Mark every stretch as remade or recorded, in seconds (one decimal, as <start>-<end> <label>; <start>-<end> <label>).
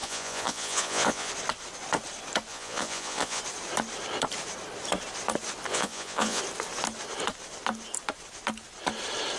0.0-1.3 remade; 1.3-2.5 recorded; 2.5-3.4 remade; 3.4-5.7 recorded; 5.7-6.4 remade; 6.4-9.4 recorded